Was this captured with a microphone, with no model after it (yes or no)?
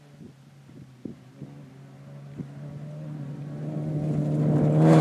yes